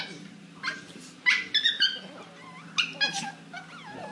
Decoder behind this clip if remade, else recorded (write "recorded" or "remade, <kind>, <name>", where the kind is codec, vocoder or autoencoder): recorded